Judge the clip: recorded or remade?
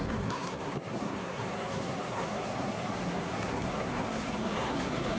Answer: remade